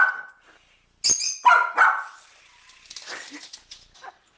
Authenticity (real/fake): real